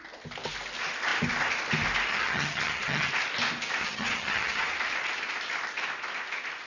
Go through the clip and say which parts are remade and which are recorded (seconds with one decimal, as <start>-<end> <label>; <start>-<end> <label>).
0.0-2.1 recorded; 2.1-3.1 remade; 3.1-3.8 recorded; 3.8-4.7 remade; 4.7-6.7 recorded